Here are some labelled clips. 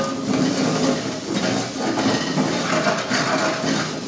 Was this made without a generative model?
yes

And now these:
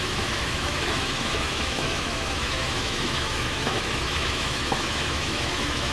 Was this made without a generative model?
no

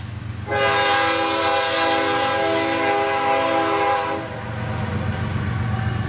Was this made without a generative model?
yes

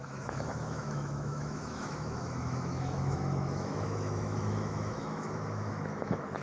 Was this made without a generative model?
no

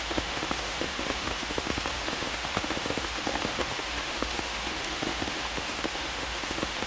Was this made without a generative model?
no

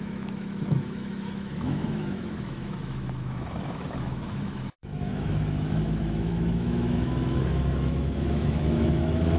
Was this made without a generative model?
no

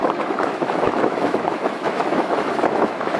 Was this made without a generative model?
no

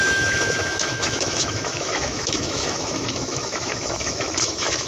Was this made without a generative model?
no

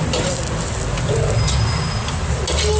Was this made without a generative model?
yes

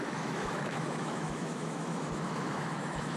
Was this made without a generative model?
no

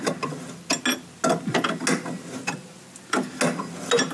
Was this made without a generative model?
yes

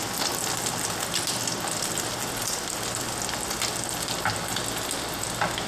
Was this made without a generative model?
yes